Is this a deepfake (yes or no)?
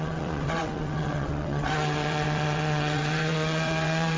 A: yes